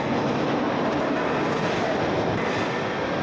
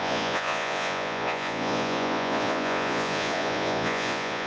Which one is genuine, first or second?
first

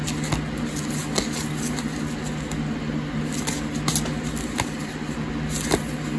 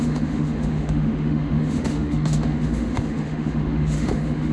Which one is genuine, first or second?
first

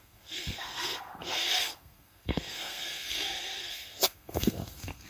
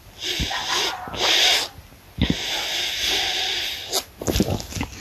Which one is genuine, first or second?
second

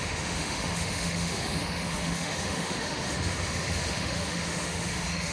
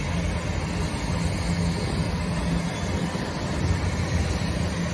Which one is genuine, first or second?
second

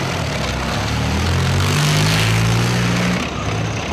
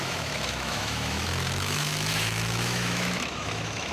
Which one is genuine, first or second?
first